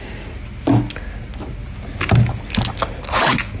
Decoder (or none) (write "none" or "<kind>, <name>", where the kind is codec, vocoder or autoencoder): none